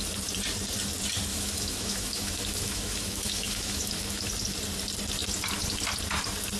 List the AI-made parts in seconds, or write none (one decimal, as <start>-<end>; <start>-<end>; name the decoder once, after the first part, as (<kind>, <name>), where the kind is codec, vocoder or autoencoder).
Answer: 1.3-4.3 (autoencoder, DAC-VAE)